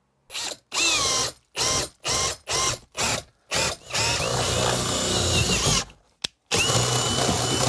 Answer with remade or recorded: recorded